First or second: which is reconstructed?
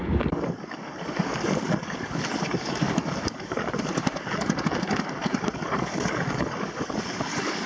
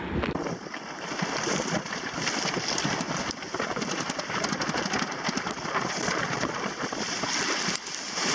first